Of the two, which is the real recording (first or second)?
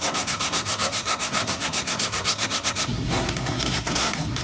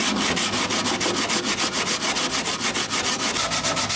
second